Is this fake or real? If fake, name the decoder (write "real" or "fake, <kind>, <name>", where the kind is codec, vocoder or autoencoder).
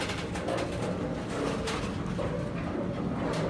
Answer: real